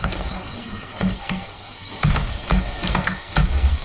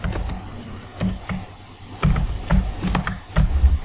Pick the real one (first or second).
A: second